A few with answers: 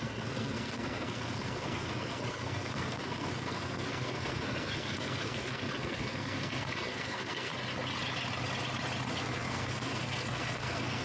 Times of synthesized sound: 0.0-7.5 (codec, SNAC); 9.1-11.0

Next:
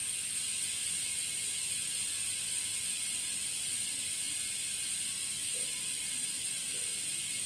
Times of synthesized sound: none

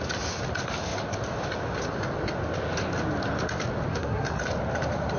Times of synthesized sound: 3.9-4.4 (codec, SNAC)

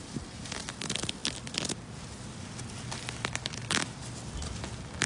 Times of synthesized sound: none

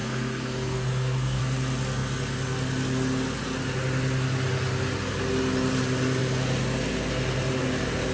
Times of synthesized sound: 0.0-1.4 (codec, SNAC)

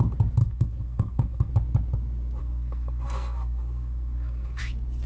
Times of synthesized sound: 0.4-1.5 (codec, SNAC); 2.4-4.6

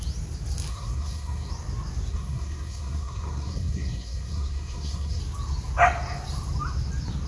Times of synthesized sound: 0.7-1.5 (codec, SNAC); 2.1-5.2